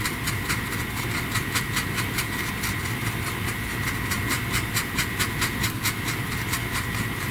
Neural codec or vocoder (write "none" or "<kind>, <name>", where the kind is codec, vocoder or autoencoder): none